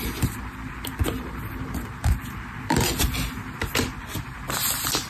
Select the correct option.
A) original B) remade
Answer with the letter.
A